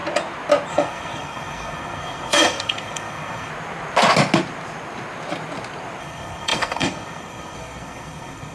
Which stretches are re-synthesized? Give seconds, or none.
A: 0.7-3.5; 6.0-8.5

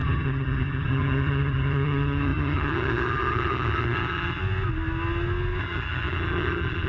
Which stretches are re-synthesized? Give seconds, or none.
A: 0.0-4.4; 5.6-6.9